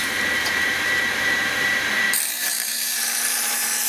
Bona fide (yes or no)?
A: no